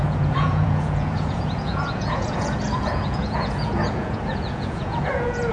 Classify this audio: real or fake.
fake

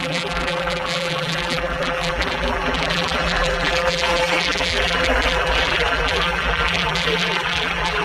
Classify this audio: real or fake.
fake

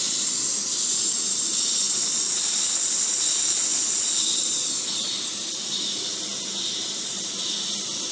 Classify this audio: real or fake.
real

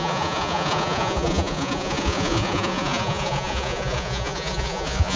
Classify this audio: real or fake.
fake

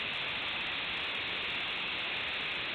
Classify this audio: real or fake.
real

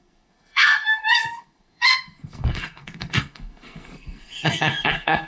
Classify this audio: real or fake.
fake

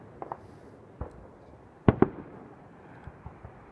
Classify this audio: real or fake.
real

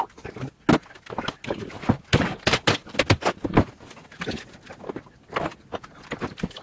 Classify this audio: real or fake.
real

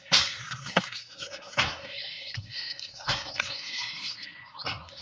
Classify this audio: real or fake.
fake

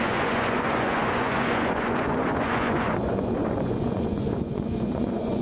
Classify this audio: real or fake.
fake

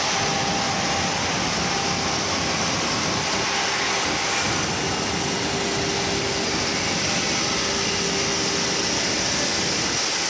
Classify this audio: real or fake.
real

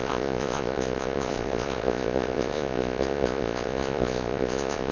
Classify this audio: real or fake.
fake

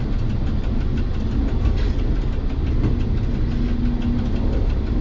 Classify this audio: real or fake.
real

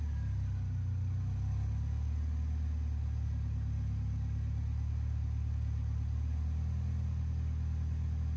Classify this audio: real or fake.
real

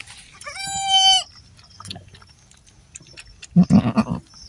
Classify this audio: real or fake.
real